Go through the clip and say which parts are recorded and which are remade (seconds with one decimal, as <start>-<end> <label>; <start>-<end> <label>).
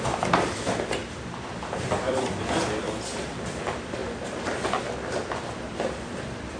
0.0-4.0 remade; 4.0-5.6 recorded; 5.6-6.6 remade